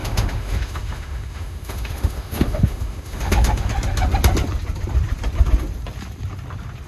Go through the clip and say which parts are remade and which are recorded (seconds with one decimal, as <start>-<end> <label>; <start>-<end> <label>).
0.0-3.7 remade; 3.7-6.9 recorded

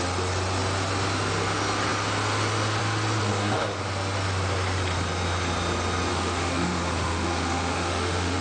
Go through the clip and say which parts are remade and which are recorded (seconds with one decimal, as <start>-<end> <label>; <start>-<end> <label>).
0.0-3.3 recorded; 3.3-3.8 remade; 3.8-6.1 recorded; 6.1-8.4 remade

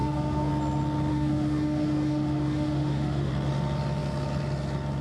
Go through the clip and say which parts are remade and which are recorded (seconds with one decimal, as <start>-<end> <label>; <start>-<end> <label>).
0.0-0.5 remade; 0.5-1.1 recorded; 1.1-3.3 remade; 3.3-5.0 recorded

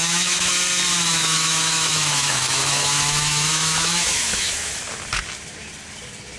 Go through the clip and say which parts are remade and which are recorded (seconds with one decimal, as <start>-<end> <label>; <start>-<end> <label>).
0.0-0.5 remade; 0.5-1.1 recorded; 1.1-4.8 remade; 4.8-6.4 recorded